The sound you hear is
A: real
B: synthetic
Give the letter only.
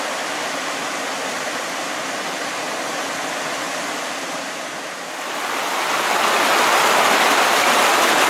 A